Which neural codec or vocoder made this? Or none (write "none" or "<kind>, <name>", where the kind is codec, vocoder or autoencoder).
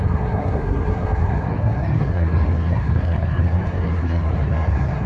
codec, SNAC